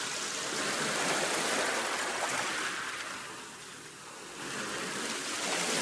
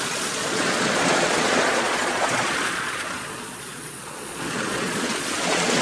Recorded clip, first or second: first